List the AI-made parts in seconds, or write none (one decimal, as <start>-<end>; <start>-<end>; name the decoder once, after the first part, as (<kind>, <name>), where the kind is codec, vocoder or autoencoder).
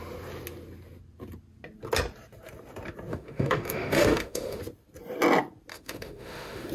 3.1-4.6 (autoencoder, DAC-VAE); 5.7-6.7